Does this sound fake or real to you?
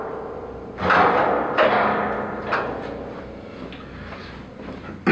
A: real